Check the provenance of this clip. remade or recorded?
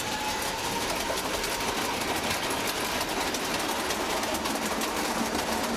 recorded